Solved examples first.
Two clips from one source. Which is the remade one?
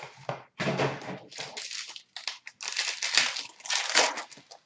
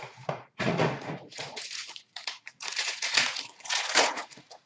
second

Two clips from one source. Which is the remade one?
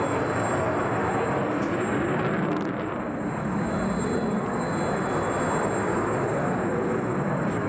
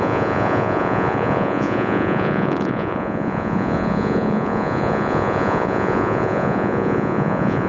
second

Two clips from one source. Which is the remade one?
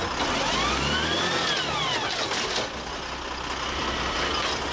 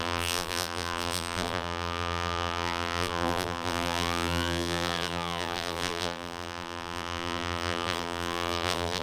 second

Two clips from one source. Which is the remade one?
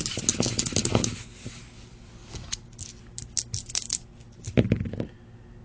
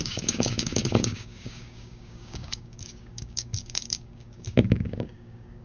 second